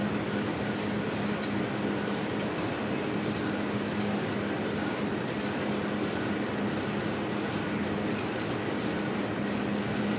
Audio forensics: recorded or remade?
recorded